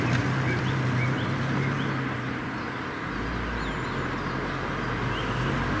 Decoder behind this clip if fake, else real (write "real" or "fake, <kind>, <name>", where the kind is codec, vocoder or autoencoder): real